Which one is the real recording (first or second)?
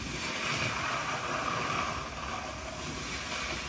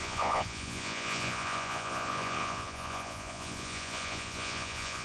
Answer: first